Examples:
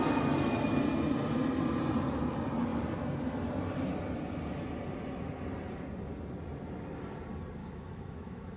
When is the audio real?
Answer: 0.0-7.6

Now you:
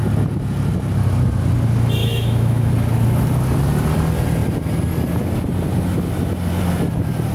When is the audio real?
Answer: 0.0-2.0; 2.7-7.3

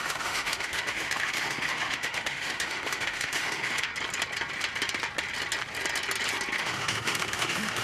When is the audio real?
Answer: 3.9-6.6

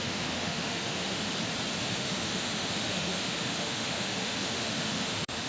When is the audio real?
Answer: 1.3-1.8

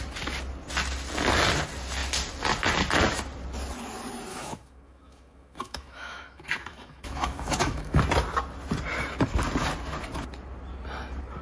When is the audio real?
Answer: 0.0-4.3; 8.0-11.4

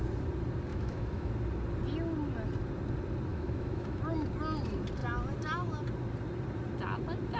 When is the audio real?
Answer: 0.0-0.7; 1.3-3.3; 4.0-7.4